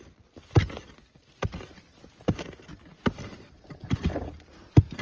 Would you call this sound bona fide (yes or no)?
yes